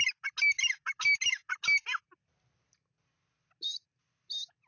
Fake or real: real